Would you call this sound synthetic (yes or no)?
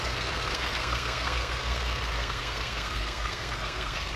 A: yes